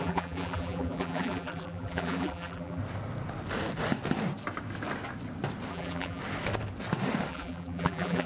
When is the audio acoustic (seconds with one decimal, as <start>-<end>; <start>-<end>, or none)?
2.8-5.7; 6.2-7.3